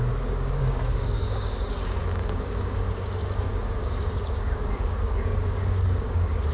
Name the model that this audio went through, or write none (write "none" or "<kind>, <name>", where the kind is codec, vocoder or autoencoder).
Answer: codec, DAC